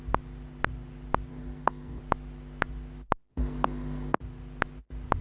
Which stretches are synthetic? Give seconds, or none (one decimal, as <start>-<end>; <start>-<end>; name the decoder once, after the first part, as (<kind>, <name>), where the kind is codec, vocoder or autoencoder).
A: 1.3-2.0 (codec, SNAC); 3.3-4.2